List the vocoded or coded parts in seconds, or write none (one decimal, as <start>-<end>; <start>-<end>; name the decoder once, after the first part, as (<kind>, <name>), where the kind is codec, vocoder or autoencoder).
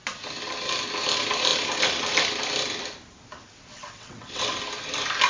3.7-4.4 (vocoder, WaveNeXt)